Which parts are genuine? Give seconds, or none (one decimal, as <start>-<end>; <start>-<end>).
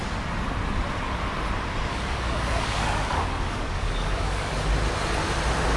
0.0-1.9; 4.5-5.8